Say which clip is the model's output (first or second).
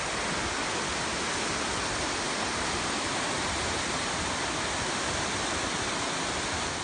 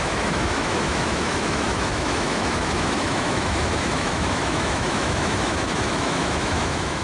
second